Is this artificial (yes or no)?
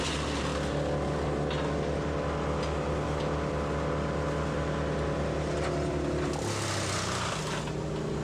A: no